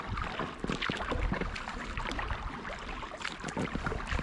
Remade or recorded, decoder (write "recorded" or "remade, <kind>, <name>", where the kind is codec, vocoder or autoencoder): recorded